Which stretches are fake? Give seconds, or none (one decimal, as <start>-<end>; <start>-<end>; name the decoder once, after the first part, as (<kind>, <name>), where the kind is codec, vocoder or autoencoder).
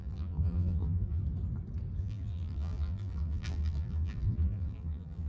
0.0-1.2 (vocoder, BigVGAN v2); 2.0-5.3